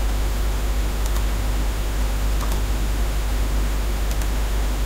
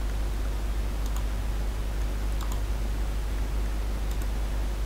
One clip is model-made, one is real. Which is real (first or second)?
second